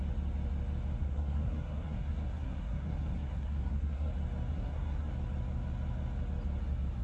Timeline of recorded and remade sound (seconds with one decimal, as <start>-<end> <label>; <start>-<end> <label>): 0.0-1.0 recorded; 1.0-4.1 remade; 4.1-4.5 recorded; 4.5-5.1 remade; 5.1-7.0 recorded